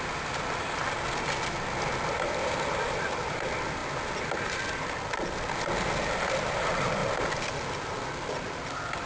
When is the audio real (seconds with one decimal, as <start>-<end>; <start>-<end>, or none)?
0.8-2.4; 3.8-6.4; 7.0-8.3